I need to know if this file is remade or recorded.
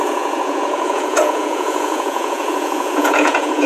remade